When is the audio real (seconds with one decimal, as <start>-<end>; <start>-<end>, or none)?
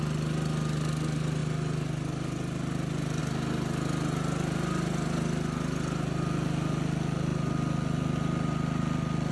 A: 0.0-9.3